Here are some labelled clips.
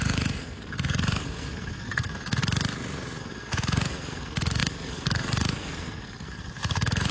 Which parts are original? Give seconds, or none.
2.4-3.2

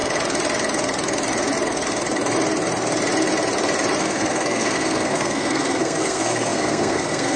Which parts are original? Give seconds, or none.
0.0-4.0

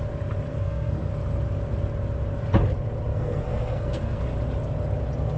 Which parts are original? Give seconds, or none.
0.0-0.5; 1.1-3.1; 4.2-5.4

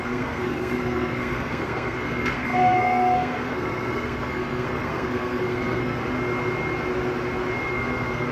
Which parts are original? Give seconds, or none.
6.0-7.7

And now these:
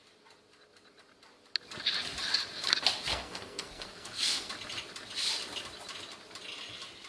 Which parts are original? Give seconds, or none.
0.0-3.1; 4.5-7.1

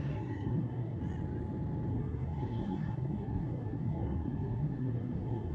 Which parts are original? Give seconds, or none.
1.0-1.9